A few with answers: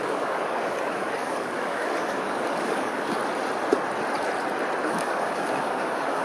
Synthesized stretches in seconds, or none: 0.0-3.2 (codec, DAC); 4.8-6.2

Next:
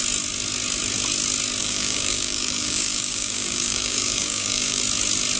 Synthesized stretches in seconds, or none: 1.6-4.8 (codec, DAC)